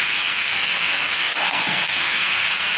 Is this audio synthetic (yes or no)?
yes